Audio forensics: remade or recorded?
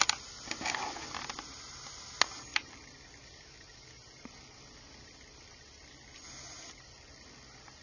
recorded